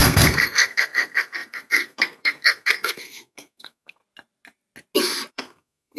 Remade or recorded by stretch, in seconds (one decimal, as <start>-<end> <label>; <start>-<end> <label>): 0.0-4.0 remade; 4.0-5.3 recorded; 5.3-6.0 remade